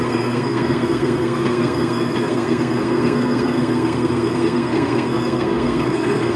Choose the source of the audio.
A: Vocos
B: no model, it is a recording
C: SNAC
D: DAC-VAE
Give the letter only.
C